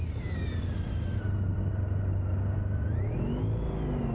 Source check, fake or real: real